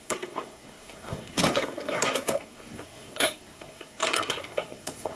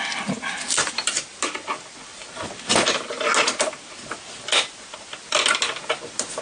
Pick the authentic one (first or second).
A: second